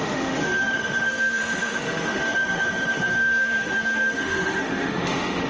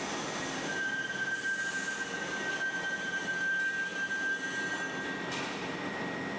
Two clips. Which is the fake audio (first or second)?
first